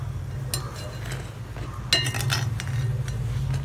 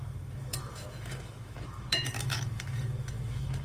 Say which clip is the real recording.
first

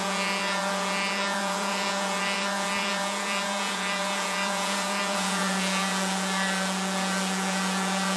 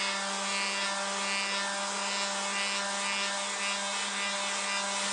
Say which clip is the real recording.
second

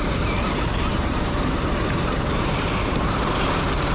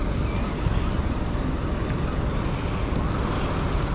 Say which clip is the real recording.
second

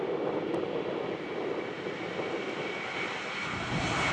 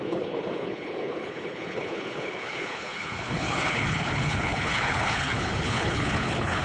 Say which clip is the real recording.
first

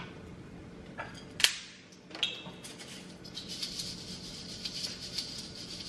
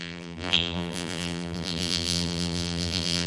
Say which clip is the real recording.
first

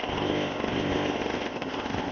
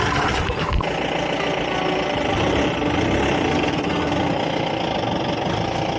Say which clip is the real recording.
second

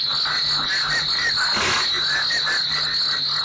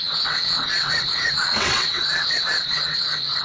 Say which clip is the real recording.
first